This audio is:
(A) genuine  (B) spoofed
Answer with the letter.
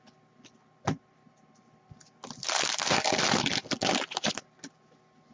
A